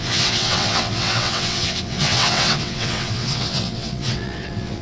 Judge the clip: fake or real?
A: fake